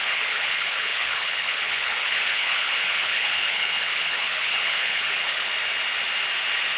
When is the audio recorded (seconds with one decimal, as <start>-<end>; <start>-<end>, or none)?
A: 5.5-6.8